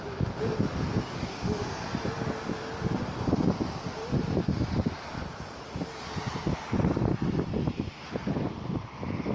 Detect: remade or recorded recorded